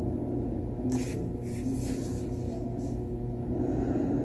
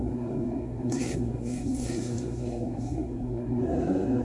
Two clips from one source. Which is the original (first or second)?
first